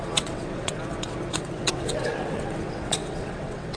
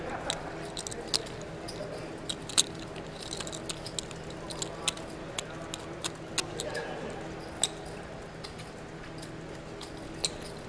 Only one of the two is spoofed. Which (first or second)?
first